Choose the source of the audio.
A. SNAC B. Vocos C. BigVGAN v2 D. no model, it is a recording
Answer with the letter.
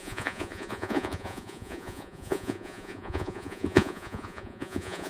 B